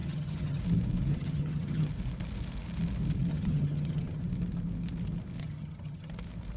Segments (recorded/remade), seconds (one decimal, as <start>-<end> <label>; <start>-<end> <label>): 0.0-0.6 remade; 0.6-1.1 recorded; 1.1-1.9 remade; 1.9-3.3 recorded; 3.3-4.2 remade; 4.2-5.4 recorded; 5.4-6.1 remade; 6.1-6.6 recorded